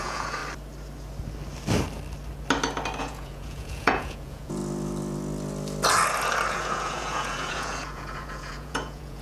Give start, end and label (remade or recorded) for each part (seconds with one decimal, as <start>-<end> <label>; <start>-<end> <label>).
0.0-0.4 remade; 0.4-3.0 recorded; 3.0-4.6 remade; 4.6-6.5 recorded; 6.5-9.2 remade